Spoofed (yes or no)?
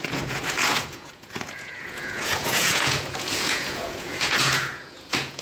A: yes